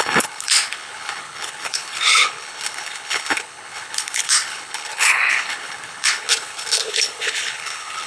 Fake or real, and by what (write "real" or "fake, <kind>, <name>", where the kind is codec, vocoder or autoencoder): fake, codec, HILCodec